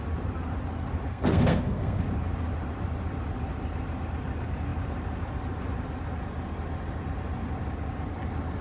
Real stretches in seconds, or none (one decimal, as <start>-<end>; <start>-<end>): 0.0-1.1; 2.0-8.6